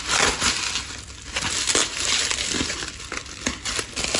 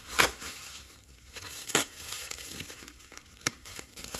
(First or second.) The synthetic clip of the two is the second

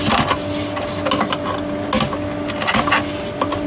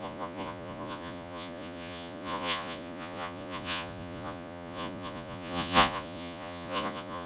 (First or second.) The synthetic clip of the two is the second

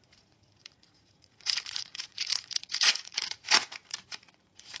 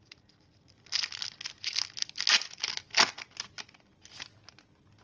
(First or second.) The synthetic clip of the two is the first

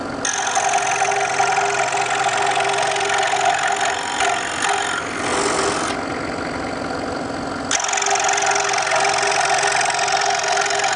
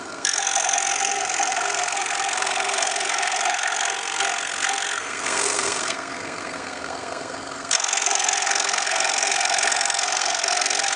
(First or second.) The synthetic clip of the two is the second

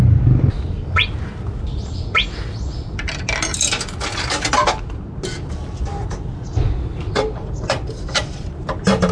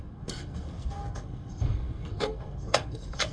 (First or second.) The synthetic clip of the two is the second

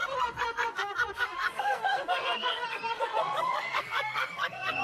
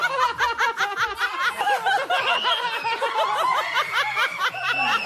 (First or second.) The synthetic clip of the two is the first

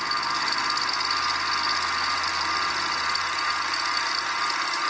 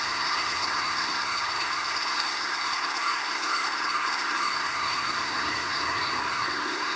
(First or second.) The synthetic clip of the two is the second